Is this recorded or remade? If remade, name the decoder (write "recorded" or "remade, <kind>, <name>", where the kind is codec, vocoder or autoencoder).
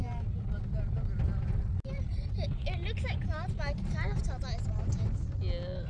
recorded